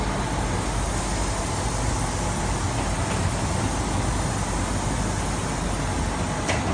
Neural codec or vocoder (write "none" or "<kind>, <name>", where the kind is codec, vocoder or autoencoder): none